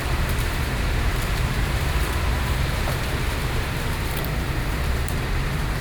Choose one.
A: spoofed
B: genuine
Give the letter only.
A